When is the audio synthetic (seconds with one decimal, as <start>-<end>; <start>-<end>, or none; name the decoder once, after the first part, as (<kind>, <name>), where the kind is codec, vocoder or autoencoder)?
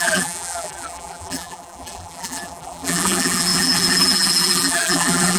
0.0-5.4 (vocoder, BigVGAN v2)